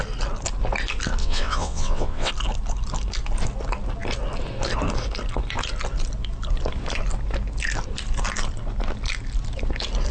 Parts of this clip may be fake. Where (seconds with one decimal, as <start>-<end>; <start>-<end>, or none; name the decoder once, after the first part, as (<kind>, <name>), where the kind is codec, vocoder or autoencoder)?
1.2-2.3 (vocoder, WaveNeXt)